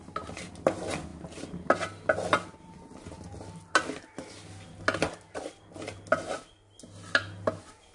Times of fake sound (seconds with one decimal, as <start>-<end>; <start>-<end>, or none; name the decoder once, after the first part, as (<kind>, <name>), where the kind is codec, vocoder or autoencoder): none